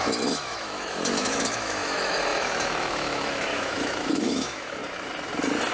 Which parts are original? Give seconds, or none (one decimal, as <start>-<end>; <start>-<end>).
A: 4.8-5.7